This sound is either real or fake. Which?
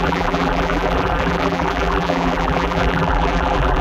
fake